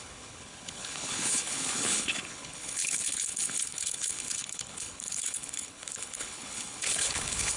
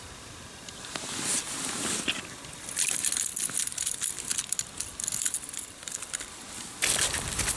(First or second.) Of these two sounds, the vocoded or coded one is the first